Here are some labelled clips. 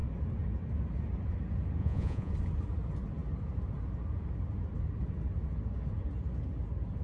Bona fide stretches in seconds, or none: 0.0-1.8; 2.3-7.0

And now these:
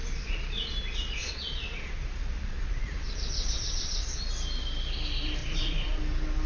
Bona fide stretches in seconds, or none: 0.7-1.2; 4.2-5.4; 6.0-6.5

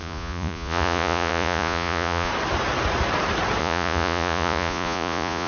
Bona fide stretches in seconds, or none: 2.3-3.6

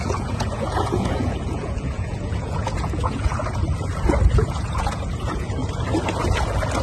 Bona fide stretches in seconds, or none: 3.3-4.3; 5.6-6.8

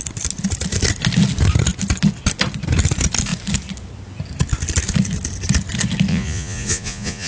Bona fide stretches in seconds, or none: 0.0-6.1

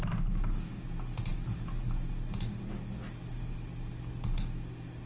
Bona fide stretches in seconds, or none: 0.0-5.1

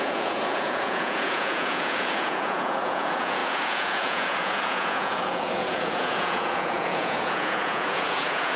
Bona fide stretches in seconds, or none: none

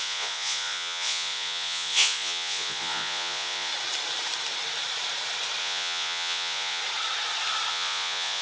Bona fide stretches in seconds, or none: 3.7-5.6; 6.8-7.7